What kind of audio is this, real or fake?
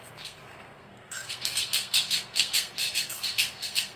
fake